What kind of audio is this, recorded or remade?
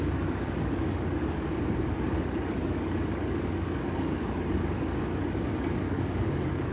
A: remade